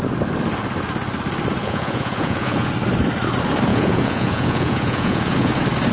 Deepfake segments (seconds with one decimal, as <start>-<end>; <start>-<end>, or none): 1.6-2.7; 3.7-5.5